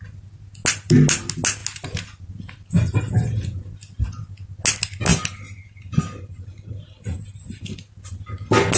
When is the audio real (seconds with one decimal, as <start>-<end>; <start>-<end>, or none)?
0.0-8.8